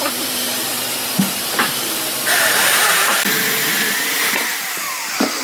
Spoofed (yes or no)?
yes